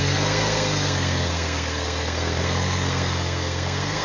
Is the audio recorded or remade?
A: remade